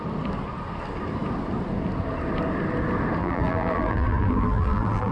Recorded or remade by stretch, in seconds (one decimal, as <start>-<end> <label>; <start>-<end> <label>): 0.0-3.2 recorded; 3.2-5.1 remade